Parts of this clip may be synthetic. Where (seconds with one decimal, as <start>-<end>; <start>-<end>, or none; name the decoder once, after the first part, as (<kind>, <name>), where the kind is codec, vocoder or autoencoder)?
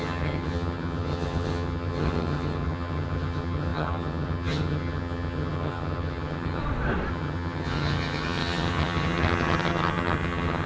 0.0-6.6 (vocoder, HiFi-GAN); 7.1-10.7